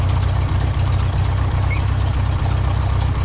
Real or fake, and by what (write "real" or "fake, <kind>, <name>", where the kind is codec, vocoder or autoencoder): real